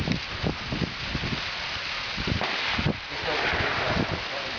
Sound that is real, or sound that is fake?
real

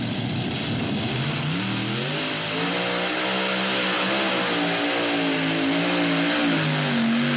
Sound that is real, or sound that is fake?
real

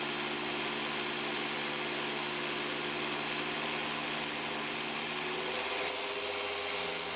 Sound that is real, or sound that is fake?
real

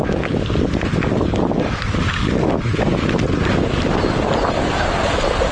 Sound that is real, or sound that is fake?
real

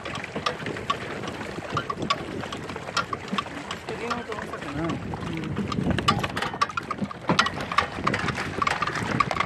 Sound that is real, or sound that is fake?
real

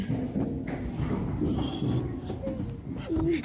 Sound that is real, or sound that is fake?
real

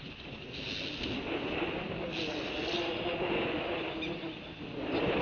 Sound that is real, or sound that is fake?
real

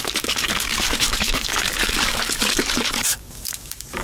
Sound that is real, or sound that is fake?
fake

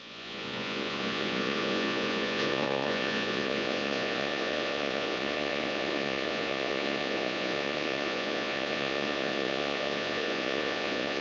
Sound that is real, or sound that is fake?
fake